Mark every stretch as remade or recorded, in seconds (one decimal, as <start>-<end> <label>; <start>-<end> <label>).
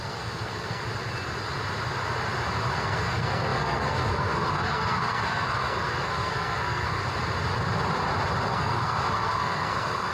0.0-0.8 remade; 0.8-2.7 recorded; 2.7-7.0 remade; 7.0-8.5 recorded; 8.5-10.1 remade